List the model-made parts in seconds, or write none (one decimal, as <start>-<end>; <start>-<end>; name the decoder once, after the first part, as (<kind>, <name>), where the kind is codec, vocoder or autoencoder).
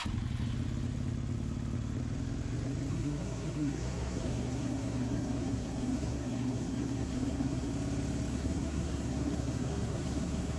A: 2.9-7.7 (codec, SNAC); 8.3-10.6